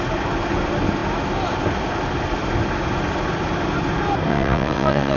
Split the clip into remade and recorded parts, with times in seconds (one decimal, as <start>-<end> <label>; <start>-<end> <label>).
0.0-4.3 recorded; 4.3-5.2 remade